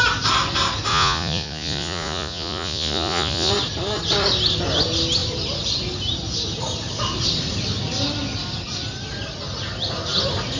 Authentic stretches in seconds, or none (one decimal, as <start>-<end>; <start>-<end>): 0.0-0.9; 3.5-10.6